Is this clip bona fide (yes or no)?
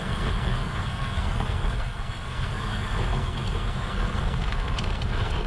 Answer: no